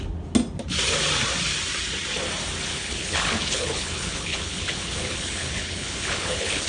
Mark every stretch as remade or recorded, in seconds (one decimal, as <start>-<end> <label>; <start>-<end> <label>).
0.0-2.7 recorded; 2.7-6.7 remade